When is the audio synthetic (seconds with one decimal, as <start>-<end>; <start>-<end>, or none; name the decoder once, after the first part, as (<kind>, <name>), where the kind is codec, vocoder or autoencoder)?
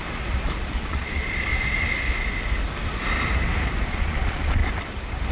0.6-1.5 (vocoder, Vocos); 3.9-4.6